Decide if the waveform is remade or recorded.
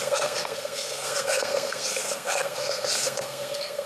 remade